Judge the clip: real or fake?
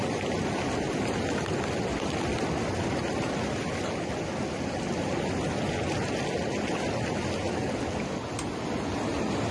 real